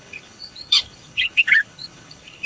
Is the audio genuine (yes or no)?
no